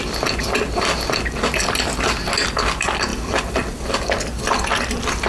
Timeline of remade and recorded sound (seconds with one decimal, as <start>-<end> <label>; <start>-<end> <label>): 0.0-5.3 recorded